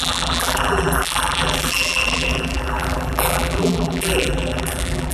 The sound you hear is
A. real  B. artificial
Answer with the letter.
B